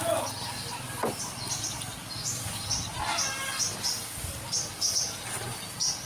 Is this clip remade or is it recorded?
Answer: recorded